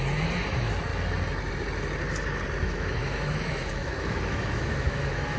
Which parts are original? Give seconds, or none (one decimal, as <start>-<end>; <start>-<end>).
0.0-2.6